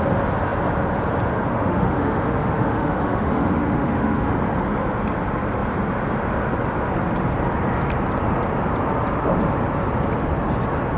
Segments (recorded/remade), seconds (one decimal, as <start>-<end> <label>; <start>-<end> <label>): 0.0-1.5 recorded; 1.5-4.3 remade; 4.3-11.0 recorded